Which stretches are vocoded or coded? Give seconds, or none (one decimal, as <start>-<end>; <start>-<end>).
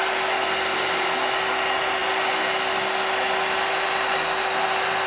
none